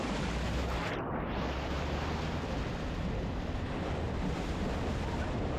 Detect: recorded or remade recorded